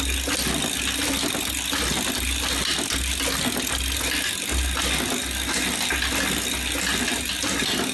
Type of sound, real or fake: real